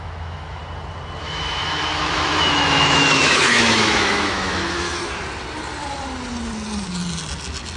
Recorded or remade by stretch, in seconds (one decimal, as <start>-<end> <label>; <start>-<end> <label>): 0.0-0.6 remade; 0.6-1.2 recorded; 1.2-5.0 remade; 5.0-7.8 recorded